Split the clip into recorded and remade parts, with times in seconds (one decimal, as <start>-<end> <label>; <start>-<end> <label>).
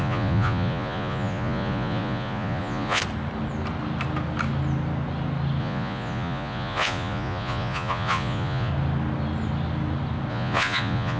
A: 0.0-3.0 remade; 3.0-5.6 recorded; 5.6-8.7 remade; 8.7-10.3 recorded; 10.3-11.2 remade